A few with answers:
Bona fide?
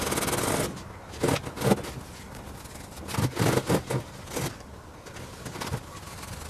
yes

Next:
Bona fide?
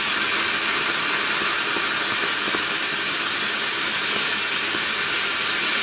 yes